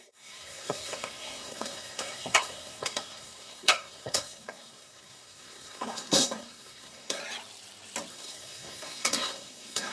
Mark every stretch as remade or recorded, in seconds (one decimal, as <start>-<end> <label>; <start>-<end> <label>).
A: 0.0-7.2 remade; 7.2-8.1 recorded; 8.1-9.9 remade